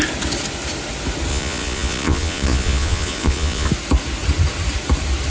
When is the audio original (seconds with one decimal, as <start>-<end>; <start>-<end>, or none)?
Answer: 0.0-1.3; 3.7-5.3